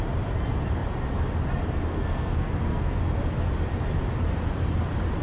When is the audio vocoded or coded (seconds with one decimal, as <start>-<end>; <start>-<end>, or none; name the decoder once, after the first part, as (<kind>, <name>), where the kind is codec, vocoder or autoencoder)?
1.9-3.0 (codec, SNAC)